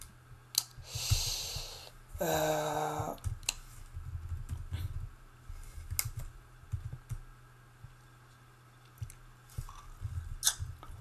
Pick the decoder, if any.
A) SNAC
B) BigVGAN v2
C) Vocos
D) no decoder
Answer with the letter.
D